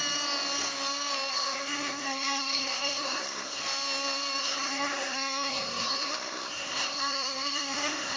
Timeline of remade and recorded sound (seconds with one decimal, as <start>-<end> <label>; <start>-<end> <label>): 0.0-1.3 recorded; 1.3-3.6 remade; 3.6-4.4 recorded; 4.4-8.2 remade